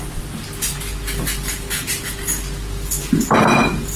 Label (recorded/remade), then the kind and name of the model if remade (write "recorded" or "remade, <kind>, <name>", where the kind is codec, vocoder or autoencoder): recorded